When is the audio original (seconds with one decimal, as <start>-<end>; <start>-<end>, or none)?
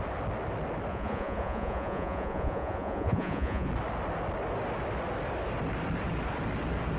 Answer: 0.0-0.9; 3.7-7.0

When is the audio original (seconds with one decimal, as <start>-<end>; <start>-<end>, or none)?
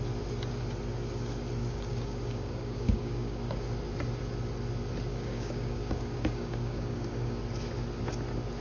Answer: 0.0-1.6; 3.6-5.1; 7.4-8.6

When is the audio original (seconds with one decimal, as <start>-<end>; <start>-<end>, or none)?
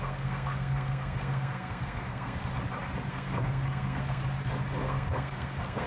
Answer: 2.4-3.1; 4.2-4.8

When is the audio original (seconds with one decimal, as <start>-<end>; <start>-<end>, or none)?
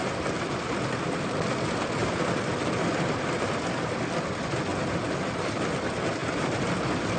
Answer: 1.5-2.0; 3.9-4.7; 5.6-6.2; 6.7-7.2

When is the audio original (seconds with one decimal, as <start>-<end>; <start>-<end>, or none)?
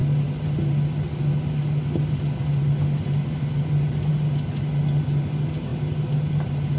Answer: 0.0-6.8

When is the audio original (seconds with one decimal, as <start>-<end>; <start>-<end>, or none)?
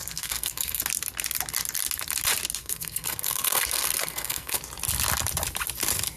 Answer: 0.8-2.6; 4.6-6.2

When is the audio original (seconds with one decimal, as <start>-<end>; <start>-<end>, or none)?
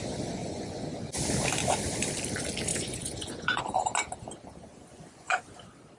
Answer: 0.0-0.4; 1.0-2.7; 3.6-4.9; 5.4-6.0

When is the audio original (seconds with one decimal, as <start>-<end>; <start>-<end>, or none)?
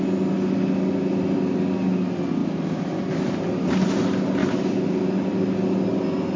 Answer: 0.0-4.4; 5.3-6.4